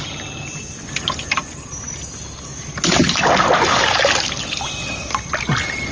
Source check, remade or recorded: recorded